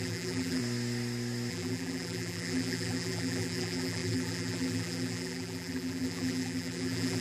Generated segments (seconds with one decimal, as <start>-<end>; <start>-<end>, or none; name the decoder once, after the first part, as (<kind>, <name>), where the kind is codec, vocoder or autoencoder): 0.0-0.6 (vocoder, BigVGAN v2); 1.5-7.2